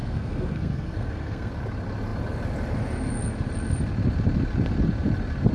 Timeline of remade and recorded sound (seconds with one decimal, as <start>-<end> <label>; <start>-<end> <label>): 0.0-1.5 remade; 1.5-5.5 recorded